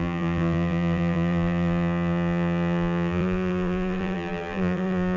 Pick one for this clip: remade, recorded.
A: remade